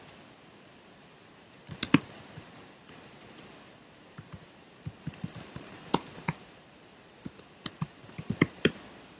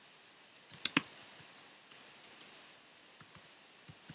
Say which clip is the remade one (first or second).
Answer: first